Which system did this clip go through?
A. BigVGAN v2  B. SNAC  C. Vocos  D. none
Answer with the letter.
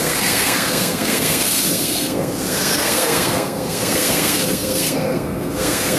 B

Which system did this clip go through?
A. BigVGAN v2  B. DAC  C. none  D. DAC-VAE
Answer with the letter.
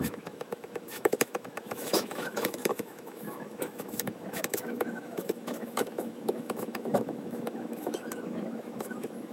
D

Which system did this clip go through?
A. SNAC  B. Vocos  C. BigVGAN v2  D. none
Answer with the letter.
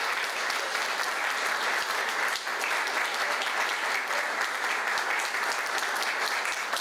D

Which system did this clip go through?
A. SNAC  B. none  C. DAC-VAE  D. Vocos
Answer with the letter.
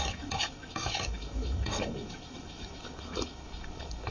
C